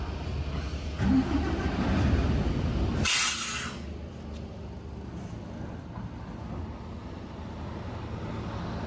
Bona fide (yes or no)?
yes